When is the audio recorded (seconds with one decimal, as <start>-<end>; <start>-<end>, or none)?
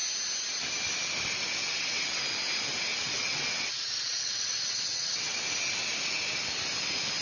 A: 0.0-1.6; 2.2-2.9; 5.4-7.2